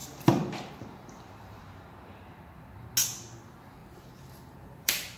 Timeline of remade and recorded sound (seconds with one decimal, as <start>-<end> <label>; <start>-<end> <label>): 0.0-1.6 remade; 1.6-3.8 recorded; 3.8-5.2 remade